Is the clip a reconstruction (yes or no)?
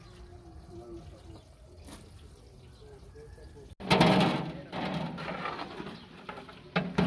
no